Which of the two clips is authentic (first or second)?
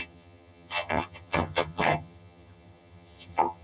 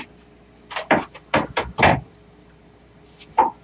second